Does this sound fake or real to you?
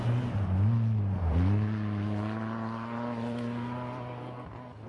real